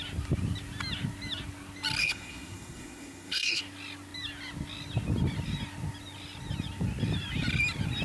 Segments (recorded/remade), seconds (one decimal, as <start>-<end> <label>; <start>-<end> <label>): 0.0-2.0 recorded; 2.0-3.6 remade; 3.6-8.0 recorded